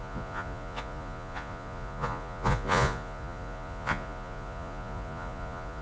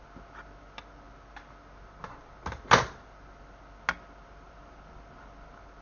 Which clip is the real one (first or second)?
second